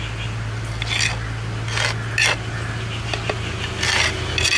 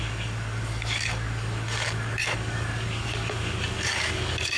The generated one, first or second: second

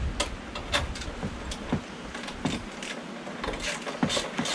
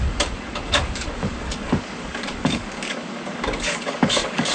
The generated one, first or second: second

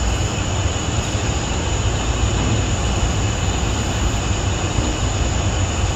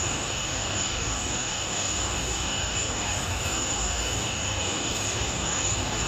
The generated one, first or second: second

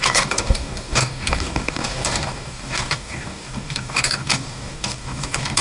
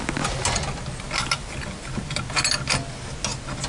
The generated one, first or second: first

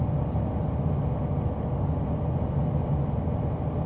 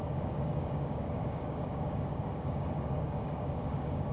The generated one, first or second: second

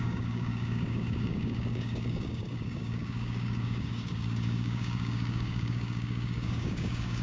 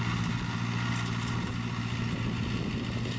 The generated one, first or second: first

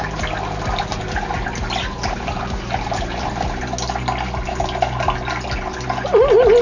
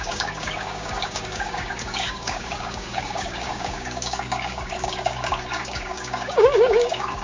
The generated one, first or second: second